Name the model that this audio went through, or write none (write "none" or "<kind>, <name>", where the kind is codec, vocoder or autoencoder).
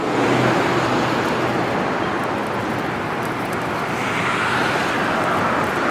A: none